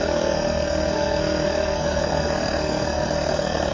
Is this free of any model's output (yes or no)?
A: no